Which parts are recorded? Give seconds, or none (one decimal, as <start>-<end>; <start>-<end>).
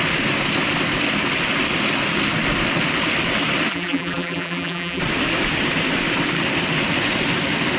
0.0-3.7; 5.0-7.8